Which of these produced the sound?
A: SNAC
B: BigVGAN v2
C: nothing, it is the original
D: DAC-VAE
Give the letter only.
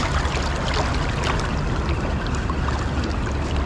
C